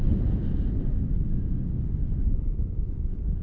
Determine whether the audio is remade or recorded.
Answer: recorded